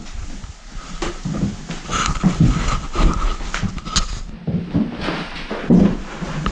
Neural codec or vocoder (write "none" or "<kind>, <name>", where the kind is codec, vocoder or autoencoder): none